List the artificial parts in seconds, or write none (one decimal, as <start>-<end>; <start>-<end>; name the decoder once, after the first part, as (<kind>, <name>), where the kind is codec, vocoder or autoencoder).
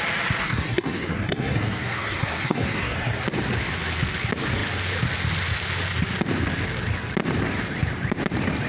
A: 0.4-3.2 (codec, SNAC)